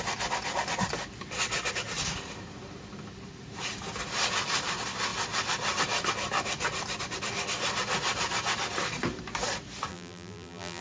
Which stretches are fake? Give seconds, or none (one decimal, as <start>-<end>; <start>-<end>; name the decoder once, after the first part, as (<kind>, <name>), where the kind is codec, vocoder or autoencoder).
9.9-10.8 (vocoder, BigVGAN v2)